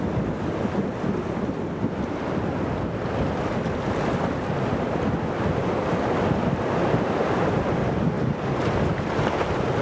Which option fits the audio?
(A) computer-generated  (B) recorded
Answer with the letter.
B